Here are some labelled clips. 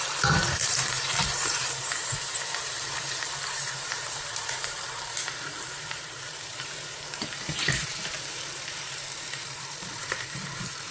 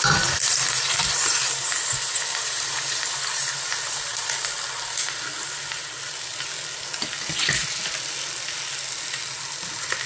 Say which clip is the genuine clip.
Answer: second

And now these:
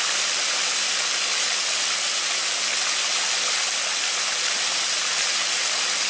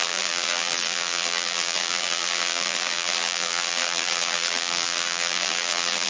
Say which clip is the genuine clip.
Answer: first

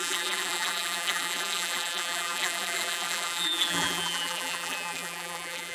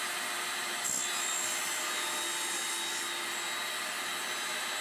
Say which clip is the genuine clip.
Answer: second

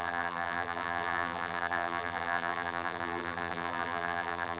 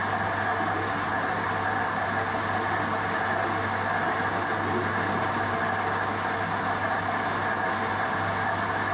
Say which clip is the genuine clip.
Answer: second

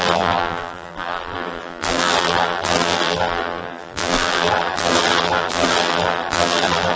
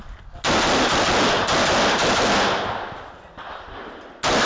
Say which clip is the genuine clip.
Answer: second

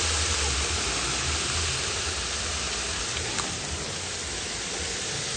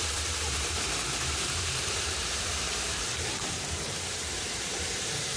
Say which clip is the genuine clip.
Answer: first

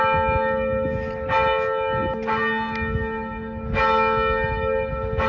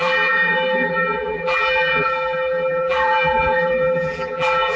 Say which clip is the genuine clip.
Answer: first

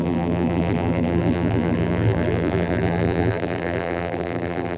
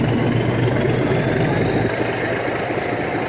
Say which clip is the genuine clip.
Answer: second